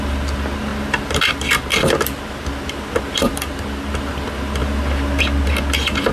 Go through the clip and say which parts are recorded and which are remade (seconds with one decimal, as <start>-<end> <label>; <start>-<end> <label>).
0.0-6.1 recorded